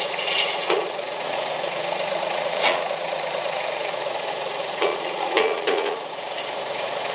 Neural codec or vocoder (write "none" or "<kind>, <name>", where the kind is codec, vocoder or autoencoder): vocoder, Vocos